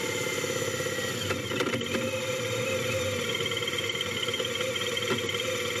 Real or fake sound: real